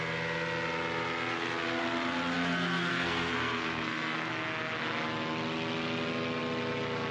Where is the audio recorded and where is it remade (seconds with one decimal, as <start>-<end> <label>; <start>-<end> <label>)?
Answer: 0.0-2.9 recorded; 2.9-4.3 remade; 4.3-7.1 recorded